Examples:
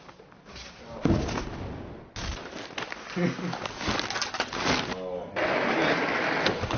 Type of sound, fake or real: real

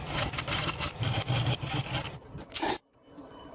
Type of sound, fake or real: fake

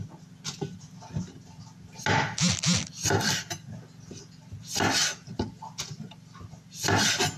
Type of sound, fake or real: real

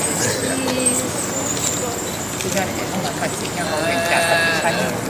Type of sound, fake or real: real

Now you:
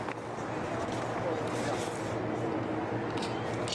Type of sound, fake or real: real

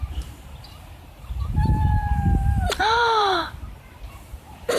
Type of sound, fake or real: fake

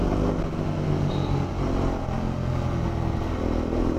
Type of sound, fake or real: real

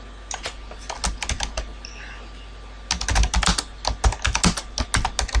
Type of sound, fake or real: real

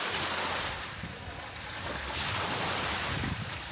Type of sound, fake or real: fake